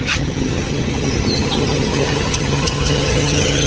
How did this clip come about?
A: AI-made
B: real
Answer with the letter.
A